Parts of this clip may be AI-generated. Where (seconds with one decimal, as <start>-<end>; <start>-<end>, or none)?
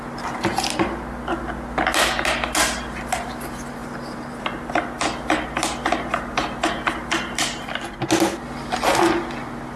none